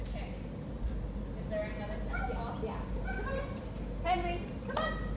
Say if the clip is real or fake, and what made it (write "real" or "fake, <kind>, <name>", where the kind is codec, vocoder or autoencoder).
real